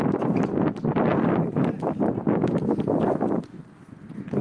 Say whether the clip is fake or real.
real